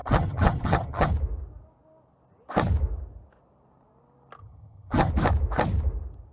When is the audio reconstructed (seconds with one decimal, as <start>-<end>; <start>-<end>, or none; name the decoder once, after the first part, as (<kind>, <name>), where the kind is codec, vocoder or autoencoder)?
0.0-1.1 (vocoder, HiFi-GAN); 4.4-5.1